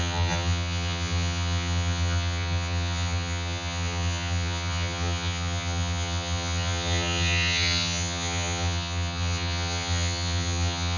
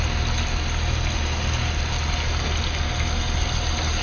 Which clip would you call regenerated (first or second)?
first